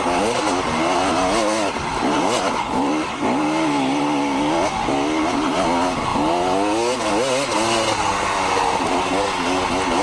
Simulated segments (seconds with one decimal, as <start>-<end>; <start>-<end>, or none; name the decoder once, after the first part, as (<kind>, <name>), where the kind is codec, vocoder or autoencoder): 1.8-2.9 (vocoder, BigVGAN v2)